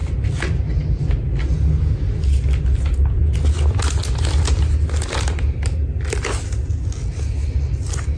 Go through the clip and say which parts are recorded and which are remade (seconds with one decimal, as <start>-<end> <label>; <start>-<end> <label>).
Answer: 0.0-8.2 recorded

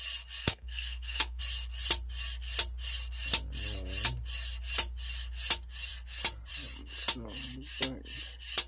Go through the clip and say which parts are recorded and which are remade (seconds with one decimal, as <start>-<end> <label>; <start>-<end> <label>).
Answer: 0.0-0.4 recorded; 0.4-1.4 remade; 1.4-8.7 recorded

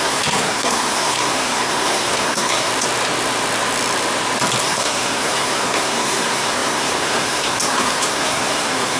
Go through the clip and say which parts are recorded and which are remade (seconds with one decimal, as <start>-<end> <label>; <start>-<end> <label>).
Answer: 0.0-2.7 remade; 2.7-4.6 recorded; 4.6-9.0 remade

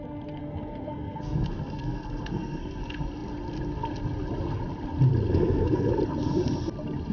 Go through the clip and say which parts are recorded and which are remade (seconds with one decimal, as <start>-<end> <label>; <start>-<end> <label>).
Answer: 0.0-0.4 recorded; 0.4-2.8 remade; 2.8-5.3 recorded; 5.3-5.9 remade; 5.9-7.1 recorded